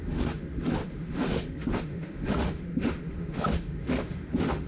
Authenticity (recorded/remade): remade